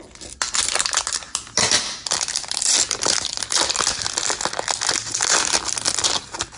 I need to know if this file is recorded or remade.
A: recorded